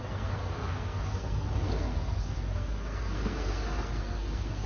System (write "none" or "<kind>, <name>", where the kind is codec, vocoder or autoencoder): codec, SNAC